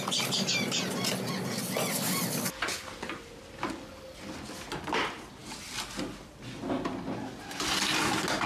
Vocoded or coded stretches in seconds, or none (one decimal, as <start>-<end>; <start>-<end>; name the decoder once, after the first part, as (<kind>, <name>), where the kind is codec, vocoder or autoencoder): none